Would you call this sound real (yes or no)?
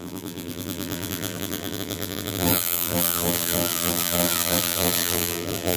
no